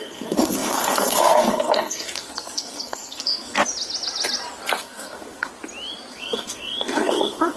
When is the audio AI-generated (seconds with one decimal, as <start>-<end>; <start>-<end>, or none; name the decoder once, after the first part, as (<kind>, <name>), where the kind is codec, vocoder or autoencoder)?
0.0-3.6 (codec, SNAC); 4.8-5.5; 6.1-7.6